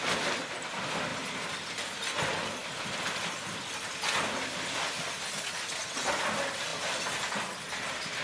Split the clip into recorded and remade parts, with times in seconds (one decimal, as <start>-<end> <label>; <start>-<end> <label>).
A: 0.0-2.6 recorded; 2.6-3.9 remade; 3.9-8.2 recorded